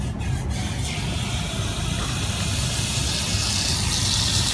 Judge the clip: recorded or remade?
recorded